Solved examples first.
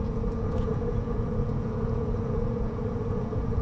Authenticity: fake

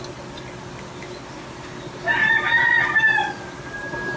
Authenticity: real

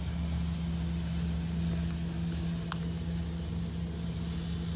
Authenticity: real